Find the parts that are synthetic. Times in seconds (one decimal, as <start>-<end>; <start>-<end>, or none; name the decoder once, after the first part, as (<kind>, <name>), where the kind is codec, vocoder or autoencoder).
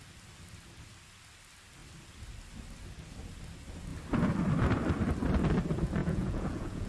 6.0-6.9 (vocoder, Vocos)